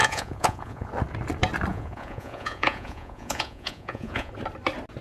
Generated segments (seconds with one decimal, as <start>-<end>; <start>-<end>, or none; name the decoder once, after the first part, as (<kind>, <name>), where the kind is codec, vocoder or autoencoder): 0.0-0.9 (vocoder, Vocos); 1.7-4.3